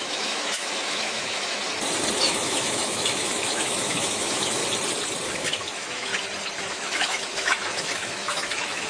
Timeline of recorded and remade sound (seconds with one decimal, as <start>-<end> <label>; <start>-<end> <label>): 0.0-1.6 remade; 1.6-2.2 recorded; 2.2-4.6 remade; 4.6-5.3 recorded; 5.3-6.1 remade; 6.1-6.7 recorded; 6.7-8.9 remade